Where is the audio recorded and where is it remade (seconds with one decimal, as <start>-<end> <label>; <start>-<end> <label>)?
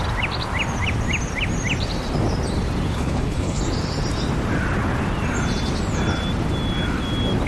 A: 0.0-2.9 recorded; 2.9-3.6 remade; 3.6-7.5 recorded